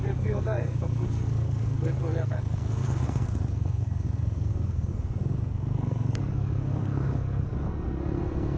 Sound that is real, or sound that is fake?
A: fake